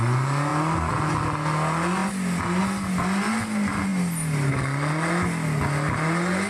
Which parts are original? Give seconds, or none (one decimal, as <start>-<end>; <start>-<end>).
0.0-6.5